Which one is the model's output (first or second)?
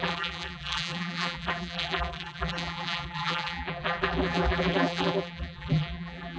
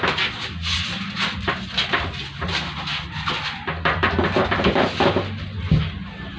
first